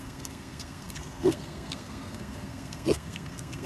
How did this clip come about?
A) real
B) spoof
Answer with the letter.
B